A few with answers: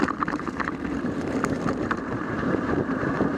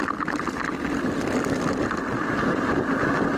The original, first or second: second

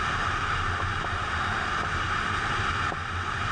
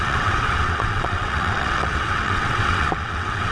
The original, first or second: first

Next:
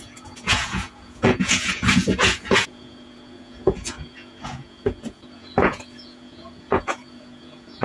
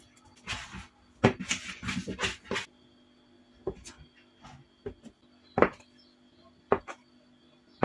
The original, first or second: second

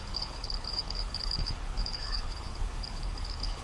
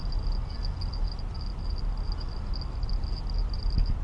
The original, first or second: second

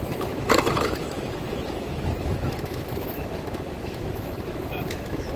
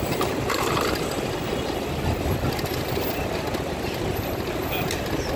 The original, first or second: second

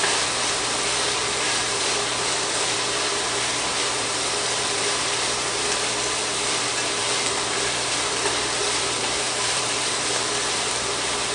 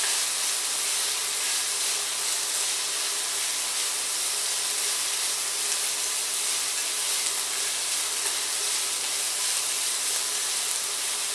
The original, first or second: second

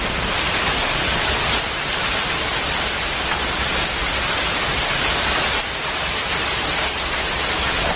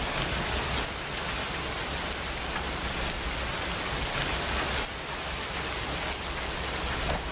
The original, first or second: second